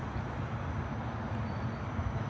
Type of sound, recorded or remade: recorded